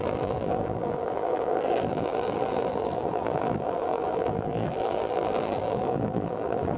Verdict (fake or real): fake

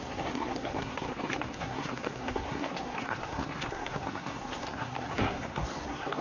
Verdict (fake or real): fake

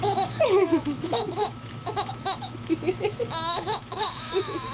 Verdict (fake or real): fake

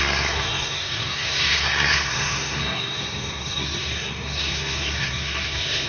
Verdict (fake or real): fake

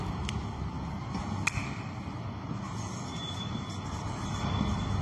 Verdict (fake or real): real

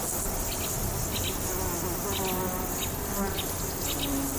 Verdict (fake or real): real